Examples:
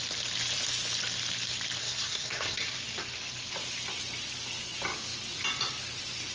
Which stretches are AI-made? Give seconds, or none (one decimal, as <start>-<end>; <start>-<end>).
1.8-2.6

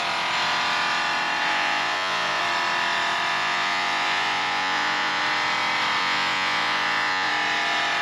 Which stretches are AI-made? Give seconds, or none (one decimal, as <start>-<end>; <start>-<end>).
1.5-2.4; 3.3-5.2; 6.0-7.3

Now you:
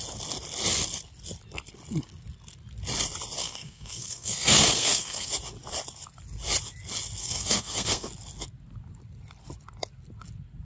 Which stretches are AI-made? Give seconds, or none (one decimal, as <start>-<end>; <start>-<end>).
3.4-5.3; 7.2-8.1

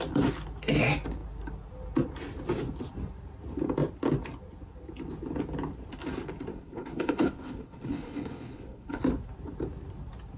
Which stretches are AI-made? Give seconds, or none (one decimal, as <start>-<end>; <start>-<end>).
6.5-9.0

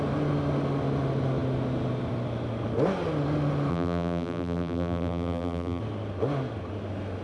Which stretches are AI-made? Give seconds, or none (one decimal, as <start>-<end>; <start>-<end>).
3.7-5.8